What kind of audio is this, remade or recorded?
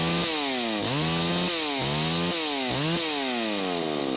recorded